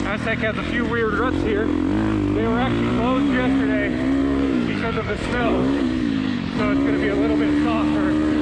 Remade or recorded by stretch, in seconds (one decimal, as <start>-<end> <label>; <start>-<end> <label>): 0.0-4.2 recorded; 4.2-6.6 remade; 6.6-8.4 recorded